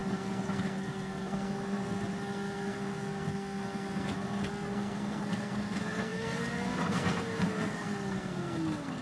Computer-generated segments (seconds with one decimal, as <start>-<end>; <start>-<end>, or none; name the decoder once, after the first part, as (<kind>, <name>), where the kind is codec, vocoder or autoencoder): 0.0-9.0 (codec, SNAC)